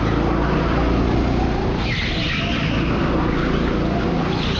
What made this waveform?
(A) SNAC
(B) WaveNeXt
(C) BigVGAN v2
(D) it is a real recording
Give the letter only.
D